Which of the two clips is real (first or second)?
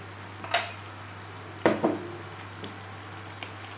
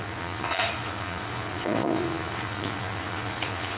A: first